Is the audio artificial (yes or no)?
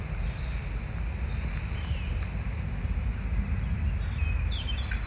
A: no